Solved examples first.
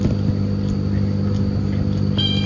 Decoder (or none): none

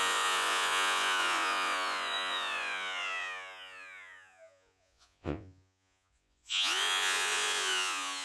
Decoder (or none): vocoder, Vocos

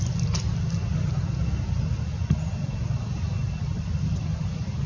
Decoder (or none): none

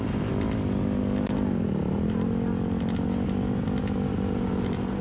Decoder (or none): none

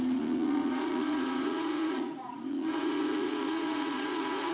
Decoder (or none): vocoder, Vocos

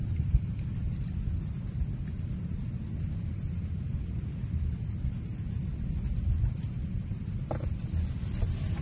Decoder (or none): none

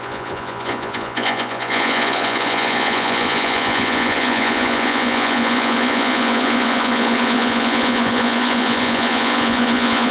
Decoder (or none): vocoder, Vocos